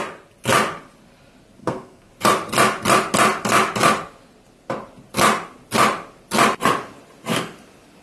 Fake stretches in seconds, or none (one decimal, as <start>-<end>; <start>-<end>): 1.6-2.1